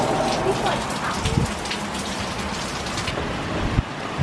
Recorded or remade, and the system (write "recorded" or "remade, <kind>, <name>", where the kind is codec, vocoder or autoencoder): recorded